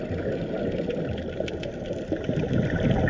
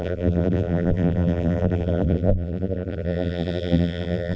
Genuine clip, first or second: first